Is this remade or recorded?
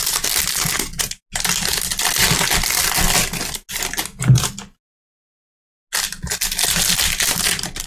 recorded